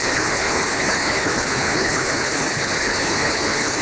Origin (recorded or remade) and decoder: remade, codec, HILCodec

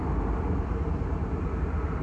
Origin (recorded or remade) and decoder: recorded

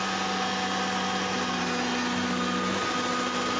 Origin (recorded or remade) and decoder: recorded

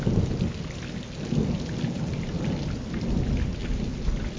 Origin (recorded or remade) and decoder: recorded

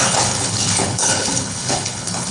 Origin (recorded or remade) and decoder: remade, codec, HILCodec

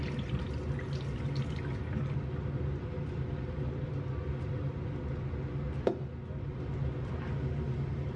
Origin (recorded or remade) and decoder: recorded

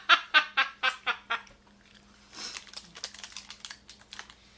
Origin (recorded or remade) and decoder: recorded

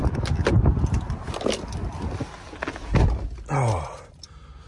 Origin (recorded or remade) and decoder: recorded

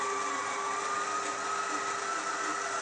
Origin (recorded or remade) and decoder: recorded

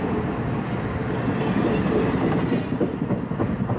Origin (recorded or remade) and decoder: recorded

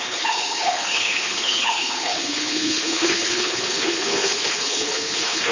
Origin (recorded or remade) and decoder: remade, codec, HILCodec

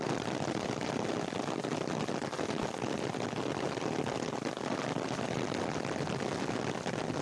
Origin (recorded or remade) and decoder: recorded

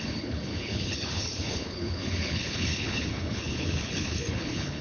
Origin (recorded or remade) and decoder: remade, codec, HILCodec